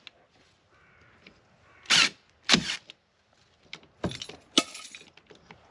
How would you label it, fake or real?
real